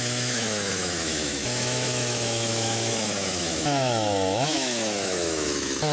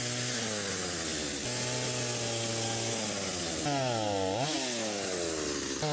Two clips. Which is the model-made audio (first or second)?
first